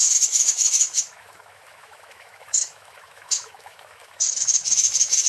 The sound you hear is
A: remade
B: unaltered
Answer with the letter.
A